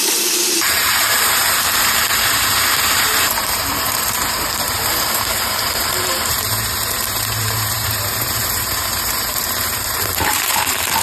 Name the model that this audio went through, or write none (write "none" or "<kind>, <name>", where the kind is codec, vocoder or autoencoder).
vocoder, BigVGAN v2